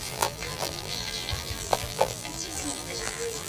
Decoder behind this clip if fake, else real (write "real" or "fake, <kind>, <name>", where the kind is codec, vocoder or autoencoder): fake, vocoder, BigVGAN v2